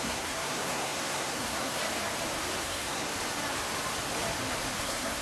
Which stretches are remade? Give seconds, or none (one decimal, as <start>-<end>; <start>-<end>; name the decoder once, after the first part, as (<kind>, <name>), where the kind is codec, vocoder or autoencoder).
0.0-1.8 (codec, SNAC); 2.6-3.1; 4.8-5.2